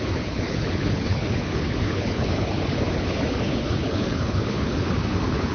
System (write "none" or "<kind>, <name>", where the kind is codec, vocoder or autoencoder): codec, HILCodec